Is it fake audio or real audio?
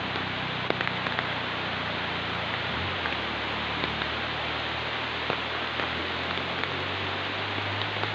real